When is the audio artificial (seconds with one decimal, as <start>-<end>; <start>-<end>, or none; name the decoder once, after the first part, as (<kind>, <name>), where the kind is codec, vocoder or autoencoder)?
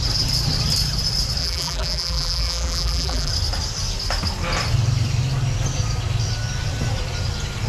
1.4-3.3 (vocoder, BigVGAN v2)